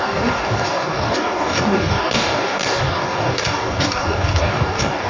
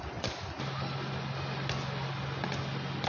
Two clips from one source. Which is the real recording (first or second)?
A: second